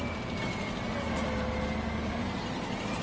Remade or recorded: recorded